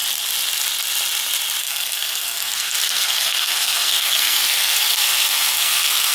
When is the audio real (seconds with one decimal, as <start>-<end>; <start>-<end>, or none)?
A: 0.0-1.6

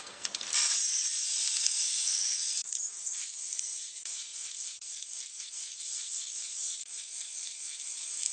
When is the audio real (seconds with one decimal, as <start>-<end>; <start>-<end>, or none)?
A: 0.5-1.6

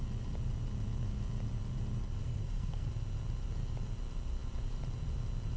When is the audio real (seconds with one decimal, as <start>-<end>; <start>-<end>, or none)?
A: 0.0-2.2; 2.9-5.6

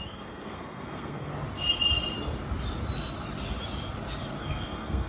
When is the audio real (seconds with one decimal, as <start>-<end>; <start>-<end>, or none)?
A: 1.3-4.4

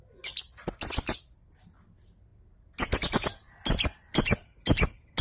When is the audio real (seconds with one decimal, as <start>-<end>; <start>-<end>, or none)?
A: 0.0-5.2